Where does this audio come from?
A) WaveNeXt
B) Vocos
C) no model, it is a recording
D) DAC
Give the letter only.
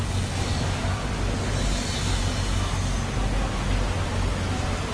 C